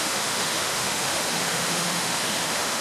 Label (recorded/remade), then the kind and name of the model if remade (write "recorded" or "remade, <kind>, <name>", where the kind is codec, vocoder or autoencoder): remade, autoencoder, DAC-VAE